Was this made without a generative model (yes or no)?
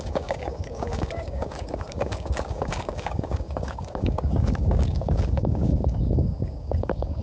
no